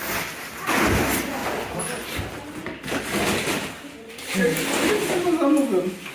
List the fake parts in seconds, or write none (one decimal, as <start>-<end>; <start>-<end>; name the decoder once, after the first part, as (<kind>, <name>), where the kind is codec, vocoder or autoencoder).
none